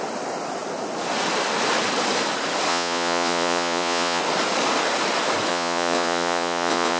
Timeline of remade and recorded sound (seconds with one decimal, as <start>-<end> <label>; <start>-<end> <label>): 0.0-2.7 recorded; 2.7-4.2 remade; 4.2-5.5 recorded; 5.5-7.0 remade